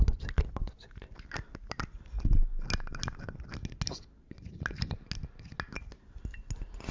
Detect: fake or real real